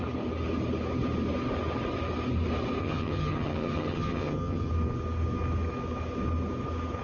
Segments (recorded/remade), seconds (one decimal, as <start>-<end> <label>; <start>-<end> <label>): 0.0-2.8 recorded; 2.8-4.7 remade; 4.7-7.0 recorded